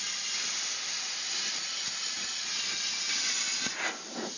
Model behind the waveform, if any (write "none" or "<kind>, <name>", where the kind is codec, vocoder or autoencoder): none